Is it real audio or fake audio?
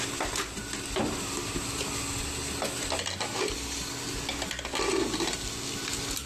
real